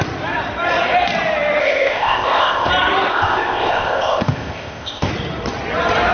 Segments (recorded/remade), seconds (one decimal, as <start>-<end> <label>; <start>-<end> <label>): 0.0-1.6 recorded; 1.6-2.7 remade; 2.7-3.1 recorded; 3.1-5.1 remade; 5.1-6.1 recorded